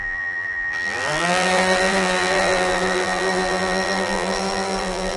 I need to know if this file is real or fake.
fake